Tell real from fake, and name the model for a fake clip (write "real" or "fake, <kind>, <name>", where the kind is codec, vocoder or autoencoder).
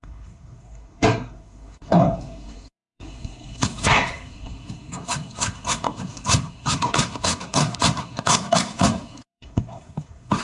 fake, codec, SNAC